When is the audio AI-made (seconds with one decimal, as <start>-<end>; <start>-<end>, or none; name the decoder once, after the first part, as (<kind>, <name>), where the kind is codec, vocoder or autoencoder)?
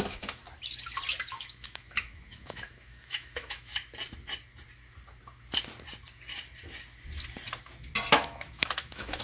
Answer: 0.0-0.4 (autoencoder, DAC-VAE); 1.3-3.7; 8.1-9.2